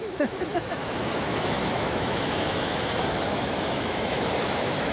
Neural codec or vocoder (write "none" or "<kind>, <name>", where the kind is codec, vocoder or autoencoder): autoencoder, DAC-VAE